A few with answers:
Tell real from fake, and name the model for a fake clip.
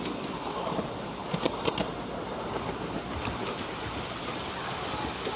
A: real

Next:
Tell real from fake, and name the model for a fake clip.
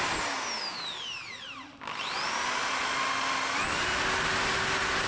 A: real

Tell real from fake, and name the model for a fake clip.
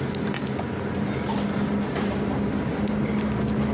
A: real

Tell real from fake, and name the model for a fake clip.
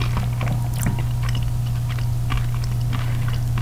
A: real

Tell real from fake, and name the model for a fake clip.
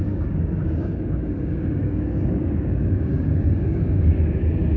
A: fake, codec, DAC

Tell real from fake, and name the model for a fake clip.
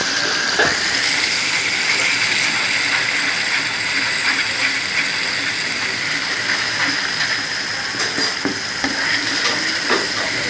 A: real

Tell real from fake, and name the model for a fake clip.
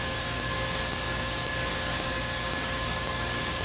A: fake, codec, DAC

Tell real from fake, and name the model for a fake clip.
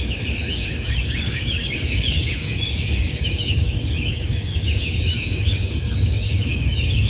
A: fake, codec, DAC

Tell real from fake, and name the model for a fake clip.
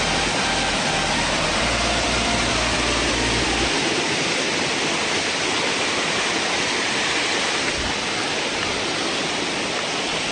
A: real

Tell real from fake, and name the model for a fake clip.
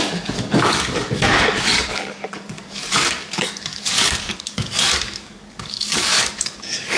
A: fake, codec, DAC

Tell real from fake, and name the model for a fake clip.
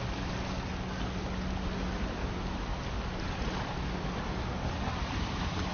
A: real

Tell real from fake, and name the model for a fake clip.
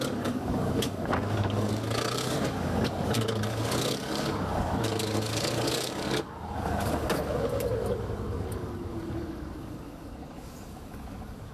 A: fake, codec, DAC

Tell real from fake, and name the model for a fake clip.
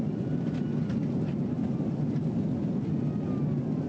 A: real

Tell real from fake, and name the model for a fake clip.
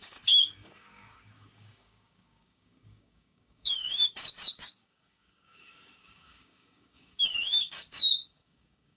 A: fake, codec, DAC